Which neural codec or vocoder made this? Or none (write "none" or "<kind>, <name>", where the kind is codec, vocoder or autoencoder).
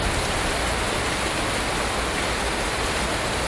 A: none